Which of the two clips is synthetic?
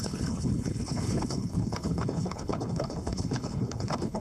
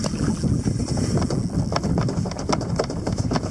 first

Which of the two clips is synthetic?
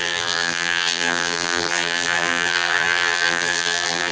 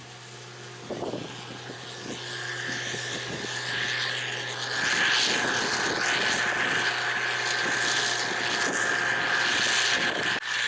first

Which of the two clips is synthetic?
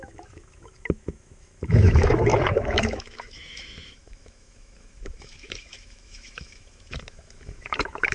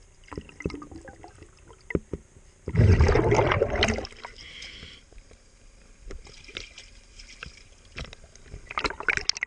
first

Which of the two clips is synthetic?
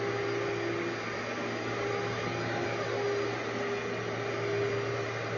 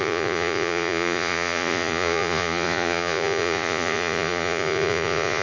second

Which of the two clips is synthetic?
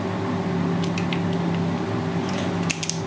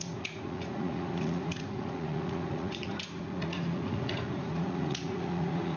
second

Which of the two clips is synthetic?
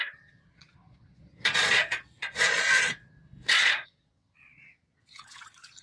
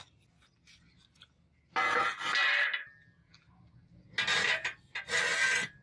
first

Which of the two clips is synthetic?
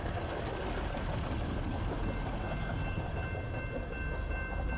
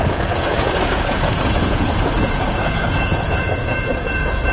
second